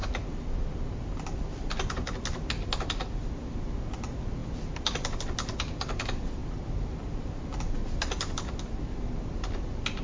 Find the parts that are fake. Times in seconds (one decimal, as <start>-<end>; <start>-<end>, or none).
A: none